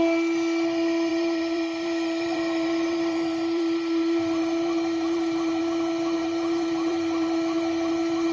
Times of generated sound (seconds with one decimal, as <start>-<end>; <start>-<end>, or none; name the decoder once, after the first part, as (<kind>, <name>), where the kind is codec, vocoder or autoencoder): 1.1-5.6 (vocoder, BigVGAN v2); 6.2-7.9